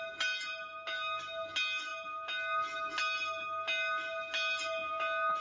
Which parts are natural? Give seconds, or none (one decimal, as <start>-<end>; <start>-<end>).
0.0-5.4